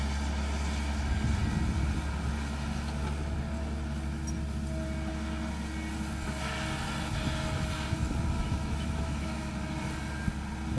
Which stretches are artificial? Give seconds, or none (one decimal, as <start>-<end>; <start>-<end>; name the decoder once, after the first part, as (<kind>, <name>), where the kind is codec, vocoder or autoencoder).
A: 8.4-9.5 (autoencoder, DAC-VAE)